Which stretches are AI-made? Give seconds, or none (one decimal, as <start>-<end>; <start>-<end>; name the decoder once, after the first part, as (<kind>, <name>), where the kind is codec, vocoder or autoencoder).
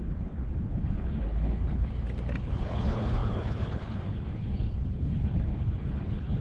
0.0-1.9 (codec, HILCodec); 2.4-6.4